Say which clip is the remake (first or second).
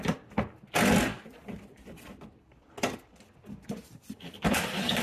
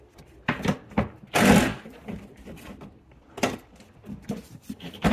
second